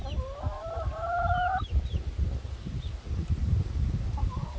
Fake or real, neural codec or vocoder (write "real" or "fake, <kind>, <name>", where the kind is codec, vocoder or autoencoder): real